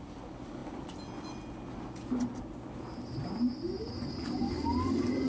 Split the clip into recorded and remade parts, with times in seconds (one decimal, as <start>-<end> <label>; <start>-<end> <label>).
0.0-5.3 recorded